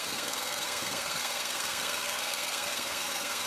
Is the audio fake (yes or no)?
yes